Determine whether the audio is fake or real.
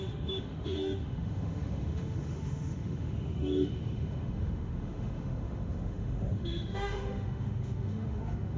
fake